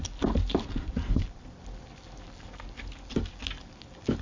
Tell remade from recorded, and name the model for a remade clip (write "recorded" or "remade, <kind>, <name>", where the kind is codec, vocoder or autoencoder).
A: recorded